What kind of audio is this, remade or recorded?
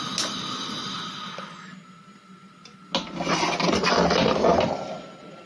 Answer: recorded